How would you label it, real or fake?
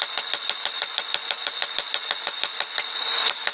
real